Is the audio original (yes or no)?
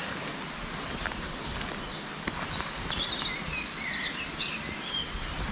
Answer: yes